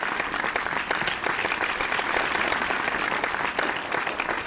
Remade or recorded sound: recorded